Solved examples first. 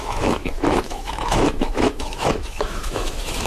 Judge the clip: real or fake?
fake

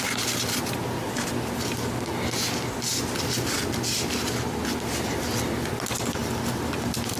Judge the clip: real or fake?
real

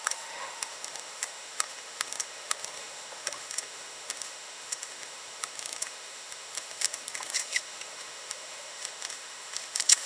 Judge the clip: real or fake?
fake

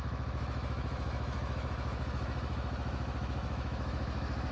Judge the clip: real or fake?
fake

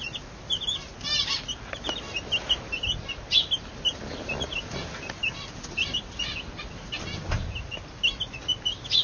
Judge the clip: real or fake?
real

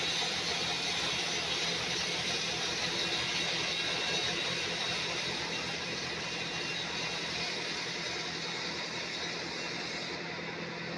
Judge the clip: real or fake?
real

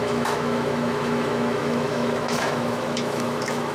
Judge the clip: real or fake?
fake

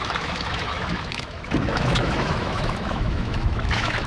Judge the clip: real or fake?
fake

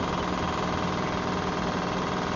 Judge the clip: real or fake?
real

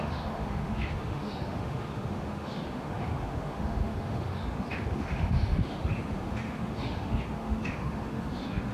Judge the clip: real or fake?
fake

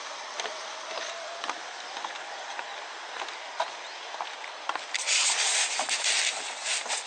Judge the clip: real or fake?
real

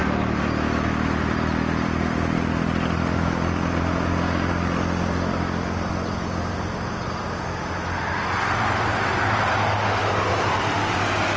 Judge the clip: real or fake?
real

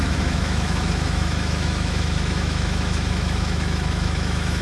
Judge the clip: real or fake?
fake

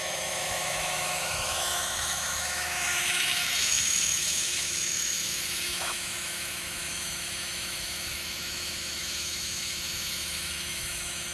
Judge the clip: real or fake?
fake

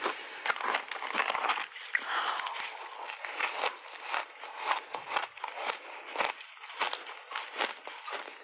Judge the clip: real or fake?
real